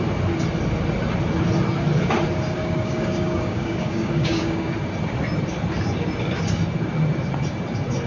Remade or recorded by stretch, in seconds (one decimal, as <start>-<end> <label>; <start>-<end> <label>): 0.0-2.6 recorded; 2.6-4.7 remade; 4.7-8.1 recorded